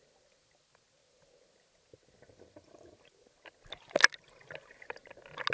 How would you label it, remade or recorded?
recorded